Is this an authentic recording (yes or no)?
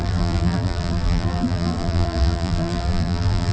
no